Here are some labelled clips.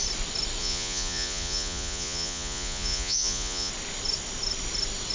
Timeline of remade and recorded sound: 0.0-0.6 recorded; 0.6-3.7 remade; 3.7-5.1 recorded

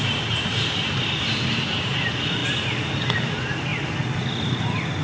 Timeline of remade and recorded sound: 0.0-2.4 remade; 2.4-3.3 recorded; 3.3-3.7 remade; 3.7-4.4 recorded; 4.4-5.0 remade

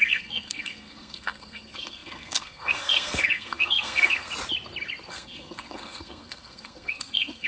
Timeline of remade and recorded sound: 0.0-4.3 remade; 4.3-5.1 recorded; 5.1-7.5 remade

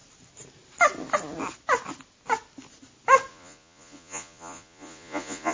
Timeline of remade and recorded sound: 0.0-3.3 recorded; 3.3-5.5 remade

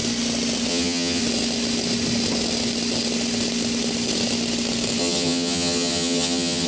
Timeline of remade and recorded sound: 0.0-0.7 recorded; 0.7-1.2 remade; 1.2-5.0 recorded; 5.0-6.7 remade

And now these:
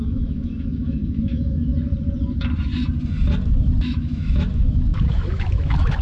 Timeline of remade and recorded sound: 0.0-1.7 remade; 1.7-3.8 recorded; 3.8-6.0 remade